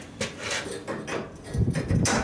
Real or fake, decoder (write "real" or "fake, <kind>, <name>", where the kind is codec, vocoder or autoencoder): real